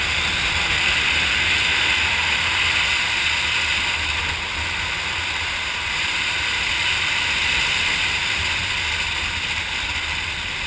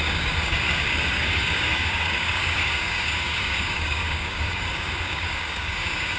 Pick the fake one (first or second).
second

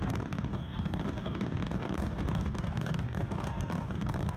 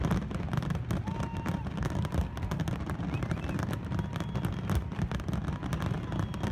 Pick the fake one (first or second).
first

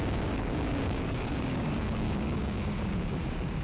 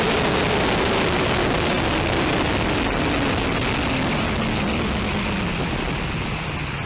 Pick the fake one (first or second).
first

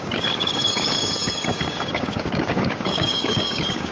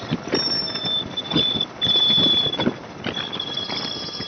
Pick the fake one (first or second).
first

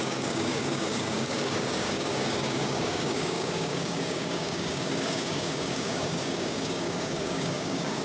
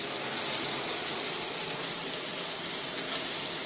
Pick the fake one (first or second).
first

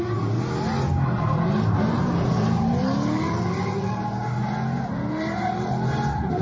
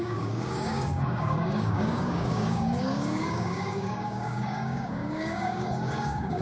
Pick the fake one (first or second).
second